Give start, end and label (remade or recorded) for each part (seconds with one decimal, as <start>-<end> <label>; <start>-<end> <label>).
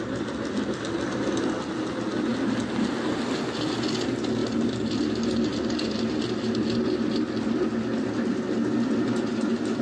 0.0-9.8 recorded